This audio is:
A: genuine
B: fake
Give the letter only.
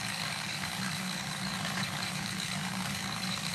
B